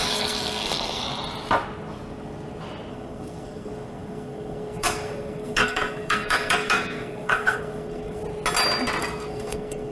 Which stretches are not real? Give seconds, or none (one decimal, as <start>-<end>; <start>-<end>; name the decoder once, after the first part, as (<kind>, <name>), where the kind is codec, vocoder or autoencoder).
0.0-1.0 (codec, SNAC); 2.9-8.2; 9.0-9.9